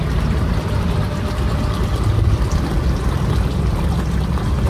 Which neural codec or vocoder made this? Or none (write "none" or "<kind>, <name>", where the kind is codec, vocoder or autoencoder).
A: none